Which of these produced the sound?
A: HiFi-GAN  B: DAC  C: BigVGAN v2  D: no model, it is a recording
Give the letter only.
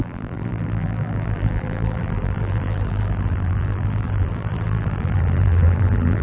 C